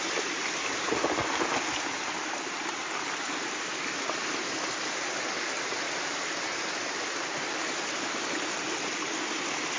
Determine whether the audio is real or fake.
real